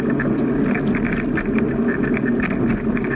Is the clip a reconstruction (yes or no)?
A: no